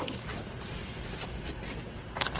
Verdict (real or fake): fake